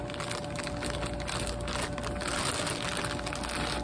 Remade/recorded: recorded